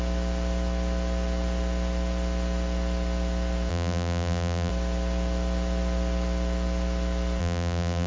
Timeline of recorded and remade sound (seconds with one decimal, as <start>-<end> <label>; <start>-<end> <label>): 0.0-3.7 recorded; 3.7-4.7 remade; 4.7-7.4 recorded; 7.4-8.1 remade